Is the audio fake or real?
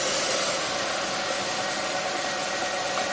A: real